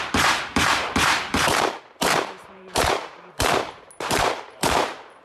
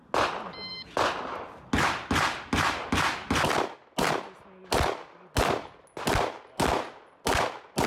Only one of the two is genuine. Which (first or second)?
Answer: second